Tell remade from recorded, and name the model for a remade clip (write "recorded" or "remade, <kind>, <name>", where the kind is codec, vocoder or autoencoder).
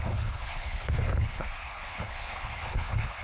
remade, codec, HILCodec